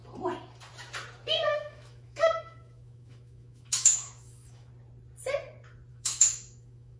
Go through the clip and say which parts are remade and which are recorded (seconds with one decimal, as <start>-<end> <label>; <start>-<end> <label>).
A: 0.0-1.5 recorded; 1.5-4.7 remade; 4.7-5.9 recorded; 5.9-7.0 remade